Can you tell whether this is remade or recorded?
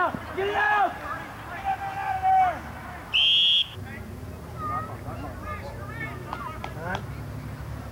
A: recorded